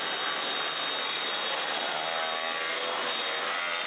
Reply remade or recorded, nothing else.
recorded